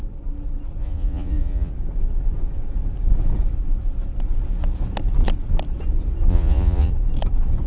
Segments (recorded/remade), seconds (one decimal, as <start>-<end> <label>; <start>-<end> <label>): 0.0-0.8 recorded; 0.8-1.7 remade; 1.7-6.3 recorded; 6.3-6.9 remade; 6.9-7.7 recorded